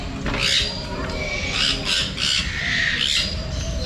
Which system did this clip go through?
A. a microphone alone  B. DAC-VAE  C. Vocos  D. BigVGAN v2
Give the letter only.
A